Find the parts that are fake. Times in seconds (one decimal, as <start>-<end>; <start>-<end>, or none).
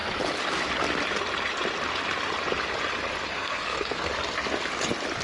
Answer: 3.3-4.1